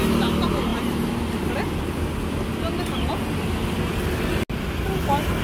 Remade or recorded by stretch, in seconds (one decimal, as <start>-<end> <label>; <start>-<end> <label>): 0.0-5.4 recorded